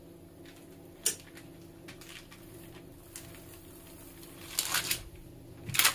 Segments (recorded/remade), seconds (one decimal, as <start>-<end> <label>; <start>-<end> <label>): 0.0-5.9 recorded